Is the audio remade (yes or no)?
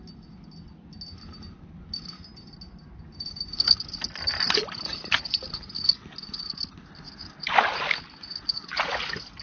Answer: no